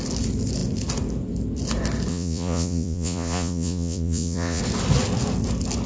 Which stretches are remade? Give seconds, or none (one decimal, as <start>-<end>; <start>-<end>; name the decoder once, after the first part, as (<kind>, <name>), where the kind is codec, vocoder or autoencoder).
2.1-4.6 (vocoder, Vocos)